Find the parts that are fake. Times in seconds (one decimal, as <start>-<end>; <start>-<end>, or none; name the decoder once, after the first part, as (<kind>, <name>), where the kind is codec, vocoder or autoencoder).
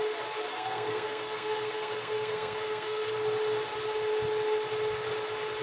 0.5-3.1 (codec, SNAC)